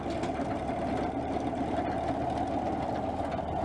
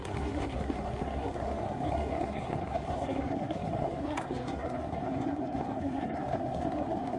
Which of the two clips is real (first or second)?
first